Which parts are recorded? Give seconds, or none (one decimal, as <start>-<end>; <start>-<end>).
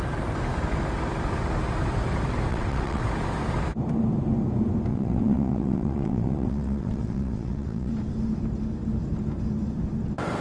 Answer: 0.0-2.5; 3.0-4.9; 7.9-10.4